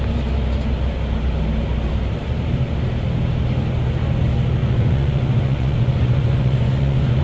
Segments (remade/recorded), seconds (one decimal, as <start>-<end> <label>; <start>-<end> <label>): 0.0-4.6 recorded; 4.6-7.2 remade